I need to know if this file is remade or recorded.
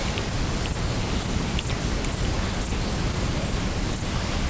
recorded